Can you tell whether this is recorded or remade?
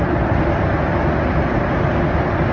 recorded